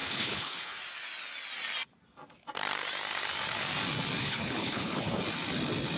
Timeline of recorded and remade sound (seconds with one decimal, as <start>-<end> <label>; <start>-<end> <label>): 0.0-0.8 remade; 0.8-4.2 recorded; 4.2-5.2 remade; 5.2-6.0 recorded